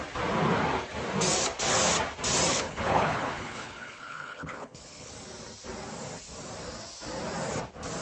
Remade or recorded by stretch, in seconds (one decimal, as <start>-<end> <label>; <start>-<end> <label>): 0.0-2.5 recorded; 2.5-5.1 remade; 5.1-8.0 recorded